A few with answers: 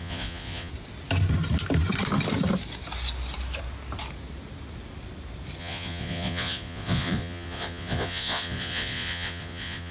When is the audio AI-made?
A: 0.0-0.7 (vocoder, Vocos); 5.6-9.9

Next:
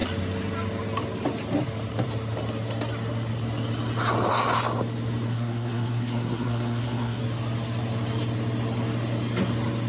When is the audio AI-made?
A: 5.3-7.2 (codec, SNAC)